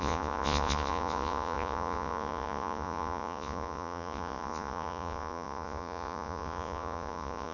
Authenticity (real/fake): fake